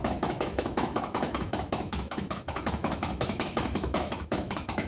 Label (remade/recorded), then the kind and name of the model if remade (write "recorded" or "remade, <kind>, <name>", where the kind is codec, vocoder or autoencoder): remade, autoencoder, DAC-VAE